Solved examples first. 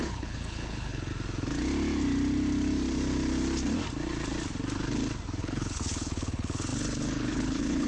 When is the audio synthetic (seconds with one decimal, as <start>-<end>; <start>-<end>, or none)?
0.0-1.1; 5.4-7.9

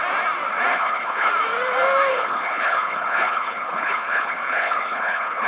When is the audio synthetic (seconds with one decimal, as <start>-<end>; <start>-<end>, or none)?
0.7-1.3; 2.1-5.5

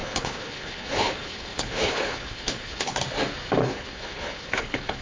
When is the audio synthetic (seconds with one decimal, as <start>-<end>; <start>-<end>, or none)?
0.0-3.0; 3.6-5.0

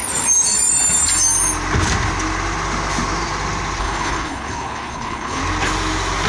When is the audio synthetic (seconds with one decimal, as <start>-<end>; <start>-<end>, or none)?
3.8-5.4